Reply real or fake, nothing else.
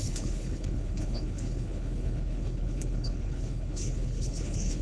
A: fake